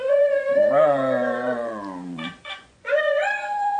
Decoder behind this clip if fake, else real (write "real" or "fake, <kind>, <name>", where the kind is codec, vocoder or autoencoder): fake, vocoder, Vocos